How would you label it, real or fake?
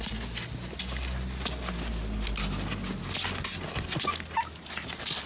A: real